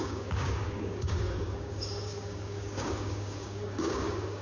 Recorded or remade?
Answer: remade